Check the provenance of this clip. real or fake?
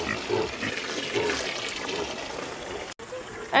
real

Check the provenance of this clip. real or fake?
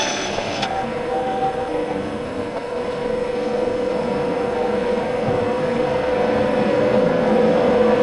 fake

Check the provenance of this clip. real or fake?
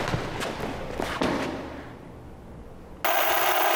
real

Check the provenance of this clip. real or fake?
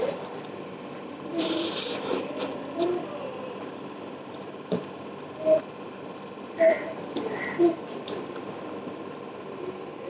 fake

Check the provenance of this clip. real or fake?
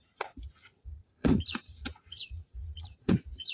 fake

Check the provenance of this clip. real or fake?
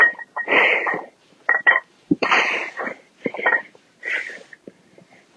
fake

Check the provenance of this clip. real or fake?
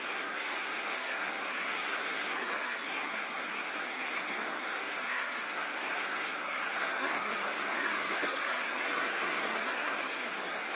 fake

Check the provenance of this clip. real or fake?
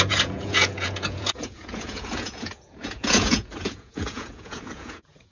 fake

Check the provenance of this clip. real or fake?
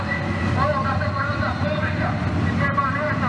real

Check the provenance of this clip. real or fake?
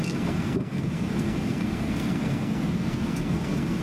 fake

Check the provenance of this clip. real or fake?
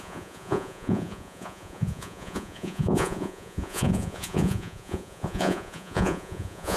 fake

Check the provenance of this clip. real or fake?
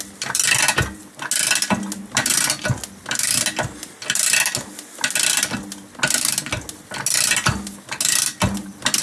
real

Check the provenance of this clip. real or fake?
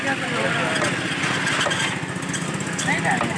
real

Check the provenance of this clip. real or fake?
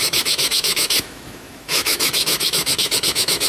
fake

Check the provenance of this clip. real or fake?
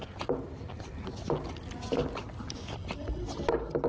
real